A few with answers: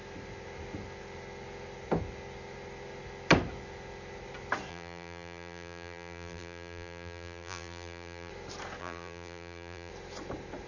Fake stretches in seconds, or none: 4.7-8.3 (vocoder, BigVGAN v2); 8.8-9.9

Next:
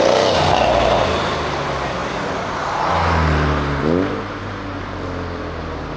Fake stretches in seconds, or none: none

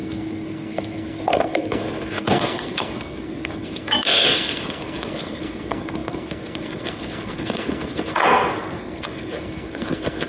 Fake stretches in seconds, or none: 0.0-10.3 (codec, SNAC)

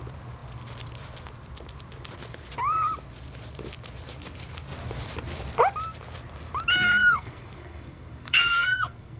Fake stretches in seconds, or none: 7.0-9.2 (codec, SNAC)

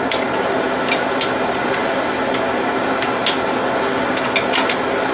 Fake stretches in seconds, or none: none

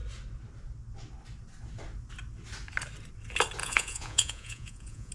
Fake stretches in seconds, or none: 3.6-5.1 (vocoder, Vocos)